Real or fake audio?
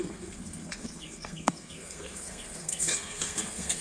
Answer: fake